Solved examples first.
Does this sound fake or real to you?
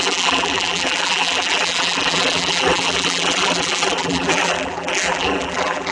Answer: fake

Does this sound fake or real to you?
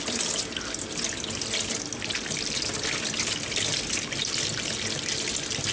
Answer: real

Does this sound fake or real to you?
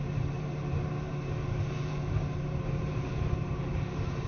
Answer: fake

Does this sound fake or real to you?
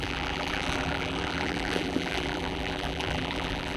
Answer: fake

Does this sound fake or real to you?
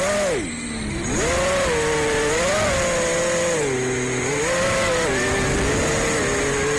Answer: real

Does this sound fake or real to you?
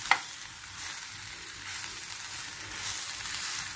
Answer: real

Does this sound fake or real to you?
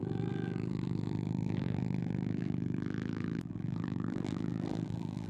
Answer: fake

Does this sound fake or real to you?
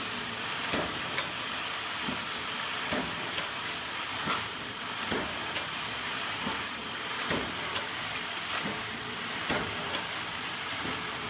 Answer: fake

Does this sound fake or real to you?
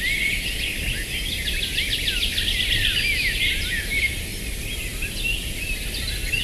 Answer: real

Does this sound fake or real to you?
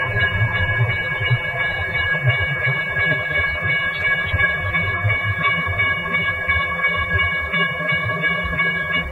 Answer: fake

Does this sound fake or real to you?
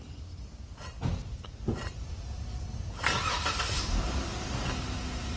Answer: real